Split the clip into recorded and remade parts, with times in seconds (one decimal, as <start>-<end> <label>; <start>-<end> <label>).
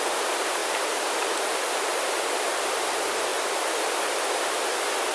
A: 0.0-3.3 remade; 3.3-5.1 recorded